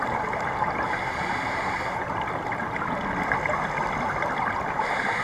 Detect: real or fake real